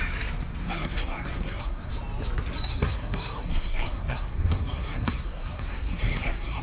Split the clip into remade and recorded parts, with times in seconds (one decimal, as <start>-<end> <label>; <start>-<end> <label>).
0.0-0.6 recorded; 0.6-1.9 remade; 1.9-2.7 recorded; 2.7-6.6 remade